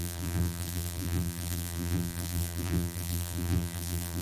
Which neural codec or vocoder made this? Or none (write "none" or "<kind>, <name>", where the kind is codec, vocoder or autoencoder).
vocoder, BigVGAN v2